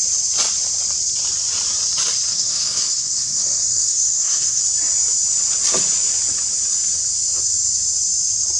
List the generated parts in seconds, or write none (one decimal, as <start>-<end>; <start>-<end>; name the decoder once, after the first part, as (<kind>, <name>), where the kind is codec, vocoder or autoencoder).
2.3-4.6 (codec, SNAC)